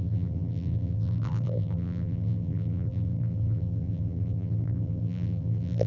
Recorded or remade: remade